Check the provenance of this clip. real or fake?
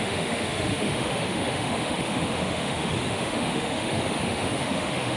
fake